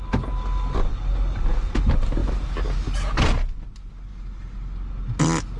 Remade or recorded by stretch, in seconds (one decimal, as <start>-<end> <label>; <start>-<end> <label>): 0.0-5.6 recorded